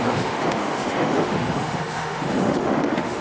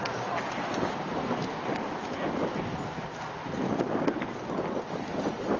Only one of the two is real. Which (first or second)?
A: second